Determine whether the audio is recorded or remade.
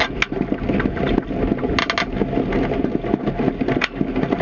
recorded